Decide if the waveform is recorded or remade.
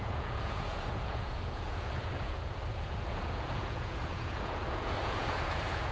remade